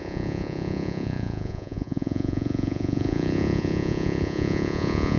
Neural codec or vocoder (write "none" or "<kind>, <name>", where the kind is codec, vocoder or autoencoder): vocoder, Vocos